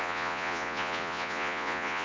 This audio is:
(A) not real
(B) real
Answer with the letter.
A